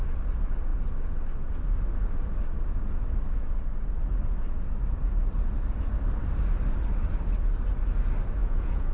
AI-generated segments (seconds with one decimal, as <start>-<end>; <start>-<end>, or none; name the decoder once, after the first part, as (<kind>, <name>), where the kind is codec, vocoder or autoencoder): 8.4-8.9 (vocoder, Vocos)